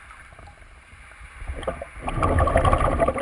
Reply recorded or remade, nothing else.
recorded